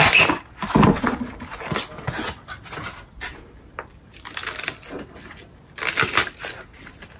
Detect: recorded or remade recorded